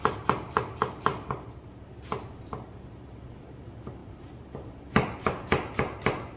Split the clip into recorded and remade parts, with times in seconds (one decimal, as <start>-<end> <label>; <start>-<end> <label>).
0.0-4.0 recorded; 4.0-4.5 remade; 4.5-6.4 recorded